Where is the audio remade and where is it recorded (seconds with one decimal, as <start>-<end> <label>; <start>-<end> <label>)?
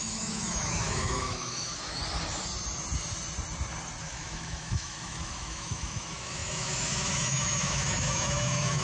0.0-2.0 remade; 2.0-4.0 recorded; 4.0-8.8 remade